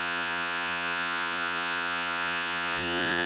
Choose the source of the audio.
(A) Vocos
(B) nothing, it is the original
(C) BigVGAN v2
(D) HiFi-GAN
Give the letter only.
A